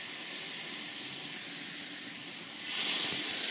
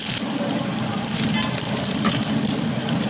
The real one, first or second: first